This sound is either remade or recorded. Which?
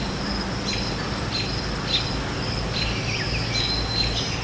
recorded